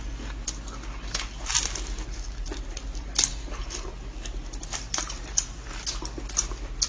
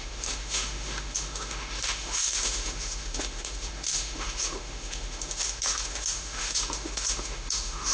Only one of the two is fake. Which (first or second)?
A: second